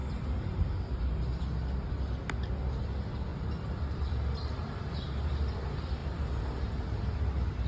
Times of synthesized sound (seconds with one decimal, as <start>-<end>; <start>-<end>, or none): 3.3-5.6